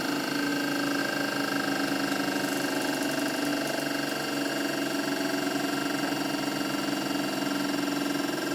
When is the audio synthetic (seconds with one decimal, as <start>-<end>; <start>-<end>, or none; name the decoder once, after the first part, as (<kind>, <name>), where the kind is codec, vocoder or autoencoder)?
none